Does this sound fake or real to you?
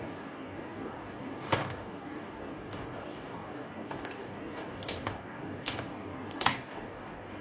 fake